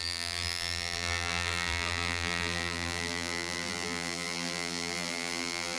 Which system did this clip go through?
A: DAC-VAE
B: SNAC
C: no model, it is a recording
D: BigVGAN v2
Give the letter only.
D